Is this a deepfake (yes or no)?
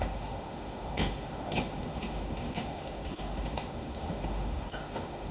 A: yes